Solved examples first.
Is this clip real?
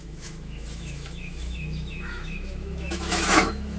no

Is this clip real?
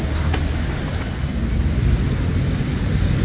yes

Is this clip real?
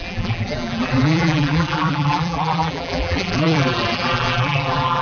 no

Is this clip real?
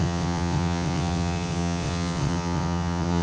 no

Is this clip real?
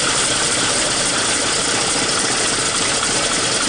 no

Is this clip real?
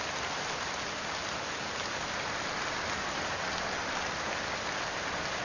yes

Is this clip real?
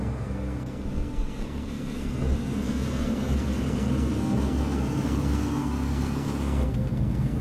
no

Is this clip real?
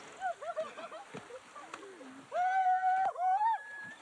yes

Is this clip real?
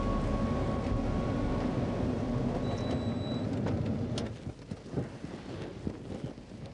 yes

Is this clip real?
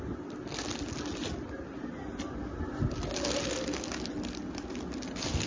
yes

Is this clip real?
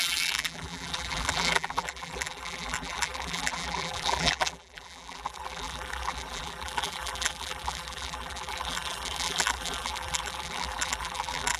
no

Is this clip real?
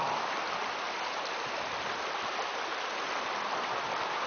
yes